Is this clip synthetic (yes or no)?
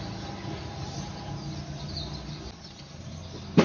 no